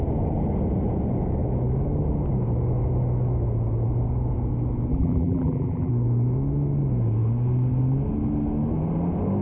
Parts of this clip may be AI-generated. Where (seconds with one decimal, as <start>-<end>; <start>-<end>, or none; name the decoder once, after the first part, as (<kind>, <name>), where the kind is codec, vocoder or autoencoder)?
4.9-5.9 (vocoder, BigVGAN v2)